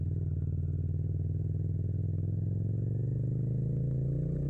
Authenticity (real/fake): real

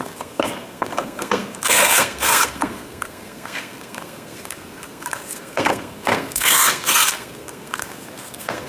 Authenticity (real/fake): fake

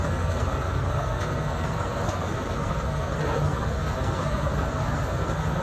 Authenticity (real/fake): fake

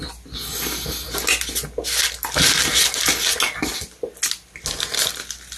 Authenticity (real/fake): real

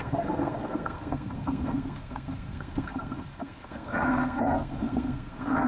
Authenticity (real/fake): fake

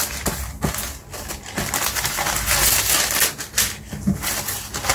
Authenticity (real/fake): real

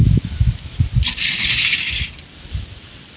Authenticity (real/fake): real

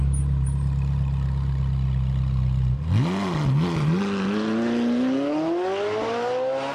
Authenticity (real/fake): real